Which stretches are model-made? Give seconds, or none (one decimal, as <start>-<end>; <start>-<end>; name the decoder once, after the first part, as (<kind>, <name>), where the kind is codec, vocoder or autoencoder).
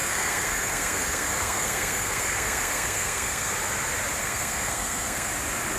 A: 0.0-3.5 (codec, SNAC); 4.2-5.3